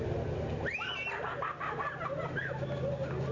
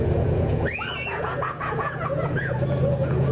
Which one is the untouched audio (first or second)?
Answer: first